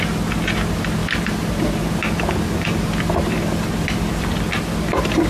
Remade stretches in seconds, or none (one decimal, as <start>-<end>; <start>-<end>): 1.0-4.2

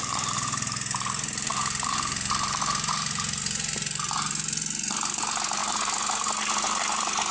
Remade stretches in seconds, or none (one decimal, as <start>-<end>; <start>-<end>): 0.0-7.3

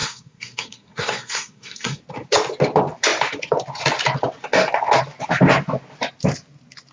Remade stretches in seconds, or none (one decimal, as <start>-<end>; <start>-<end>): 0.0-2.0

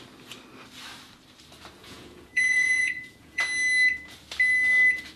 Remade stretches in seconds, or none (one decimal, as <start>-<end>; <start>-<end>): 1.8-3.4

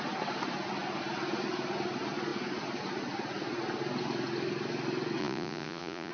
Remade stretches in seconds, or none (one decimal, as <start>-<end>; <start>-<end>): 5.2-6.1